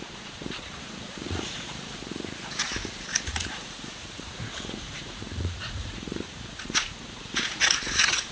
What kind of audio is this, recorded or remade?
remade